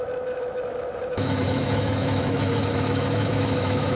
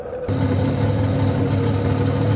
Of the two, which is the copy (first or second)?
first